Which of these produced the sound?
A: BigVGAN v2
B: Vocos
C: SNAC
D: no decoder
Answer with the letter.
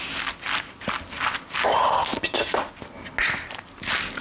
D